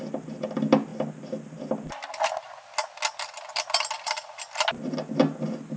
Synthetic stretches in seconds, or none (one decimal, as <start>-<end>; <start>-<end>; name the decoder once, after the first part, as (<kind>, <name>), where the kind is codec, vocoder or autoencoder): none